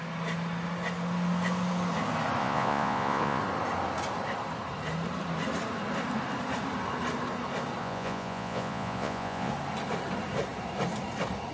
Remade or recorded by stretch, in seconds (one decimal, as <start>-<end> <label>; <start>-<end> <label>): 0.0-2.4 recorded; 2.4-3.4 remade; 3.4-7.8 recorded; 7.8-9.5 remade; 9.5-11.5 recorded